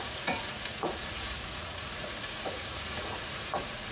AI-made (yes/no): yes